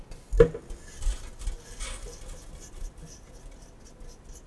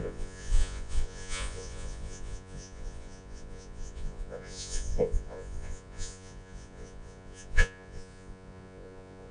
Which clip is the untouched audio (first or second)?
first